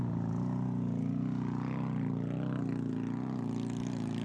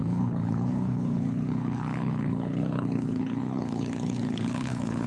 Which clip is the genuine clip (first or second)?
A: first